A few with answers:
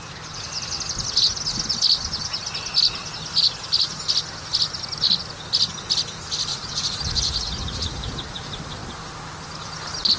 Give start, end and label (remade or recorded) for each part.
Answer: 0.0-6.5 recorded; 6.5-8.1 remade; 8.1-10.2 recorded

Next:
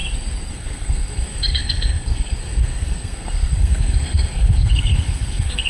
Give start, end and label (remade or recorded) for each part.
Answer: 0.0-0.5 recorded; 0.5-5.7 remade

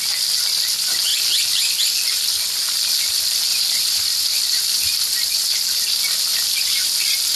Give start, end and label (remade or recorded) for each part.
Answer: 0.0-3.5 recorded; 3.5-5.1 remade; 5.1-6.3 recorded; 6.3-7.4 remade

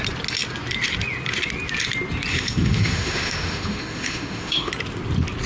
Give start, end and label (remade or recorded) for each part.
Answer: 0.0-2.3 recorded; 2.3-4.7 remade; 4.7-5.5 recorded

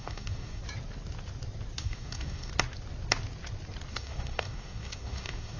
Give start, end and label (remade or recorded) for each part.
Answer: 0.0-0.6 remade; 0.6-1.8 recorded; 1.8-2.5 remade; 2.5-3.9 recorded; 3.9-5.6 remade

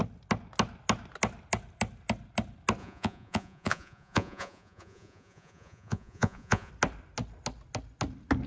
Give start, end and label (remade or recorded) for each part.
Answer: 0.0-2.8 recorded; 2.8-6.7 remade; 6.7-8.5 recorded

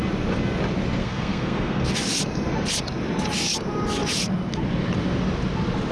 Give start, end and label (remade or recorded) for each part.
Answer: 0.0-1.0 recorded; 1.0-1.8 remade; 1.8-5.9 recorded

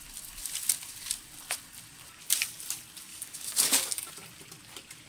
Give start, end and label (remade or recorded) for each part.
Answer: 0.0-3.1 recorded; 3.1-4.1 remade; 4.1-5.1 recorded